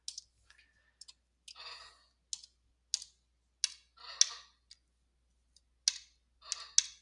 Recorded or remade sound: recorded